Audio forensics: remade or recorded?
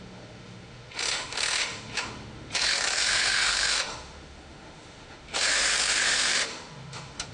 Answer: remade